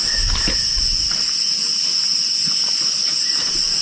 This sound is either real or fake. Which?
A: real